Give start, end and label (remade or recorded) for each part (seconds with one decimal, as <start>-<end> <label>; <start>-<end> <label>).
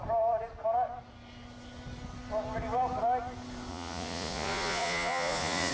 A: 0.0-3.7 recorded; 3.7-5.7 remade